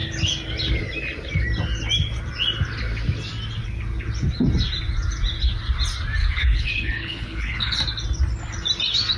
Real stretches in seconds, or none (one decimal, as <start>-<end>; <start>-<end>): 0.0-6.2; 7.8-9.2